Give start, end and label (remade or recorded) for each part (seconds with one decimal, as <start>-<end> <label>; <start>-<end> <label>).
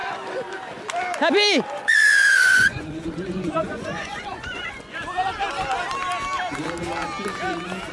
0.0-1.8 recorded; 1.8-5.0 remade; 5.0-7.9 recorded